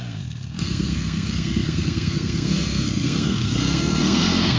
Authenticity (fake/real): fake